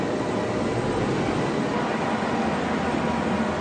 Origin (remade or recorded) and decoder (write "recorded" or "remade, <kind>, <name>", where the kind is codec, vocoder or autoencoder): recorded